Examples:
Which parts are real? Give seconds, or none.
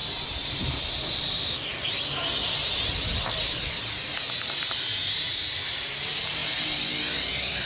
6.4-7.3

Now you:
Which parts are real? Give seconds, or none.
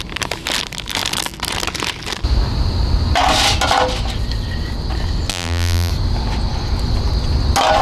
0.0-5.3; 5.9-7.8